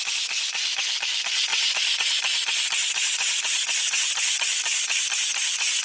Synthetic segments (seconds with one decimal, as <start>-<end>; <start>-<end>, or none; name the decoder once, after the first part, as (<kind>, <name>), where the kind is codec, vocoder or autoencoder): none